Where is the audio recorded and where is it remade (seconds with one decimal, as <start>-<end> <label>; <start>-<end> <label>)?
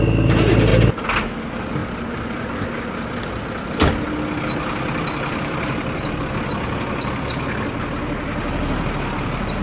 0.0-9.6 recorded